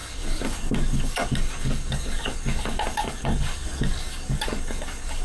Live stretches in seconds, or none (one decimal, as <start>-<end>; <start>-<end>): none